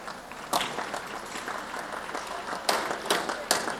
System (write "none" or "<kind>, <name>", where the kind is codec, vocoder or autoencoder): none